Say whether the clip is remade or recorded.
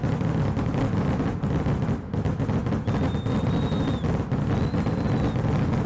recorded